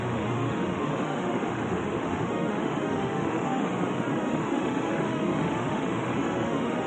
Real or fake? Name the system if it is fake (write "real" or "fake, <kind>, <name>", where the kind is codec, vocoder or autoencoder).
fake, autoencoder, DAC-VAE